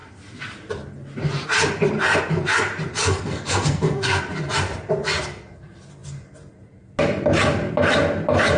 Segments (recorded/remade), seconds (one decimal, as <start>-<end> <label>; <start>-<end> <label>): 0.0-3.0 recorded; 3.0-4.2 remade; 4.2-8.6 recorded